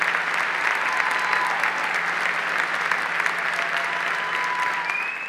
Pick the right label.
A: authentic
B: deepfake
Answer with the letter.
A